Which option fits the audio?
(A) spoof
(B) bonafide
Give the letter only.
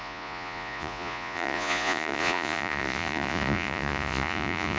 A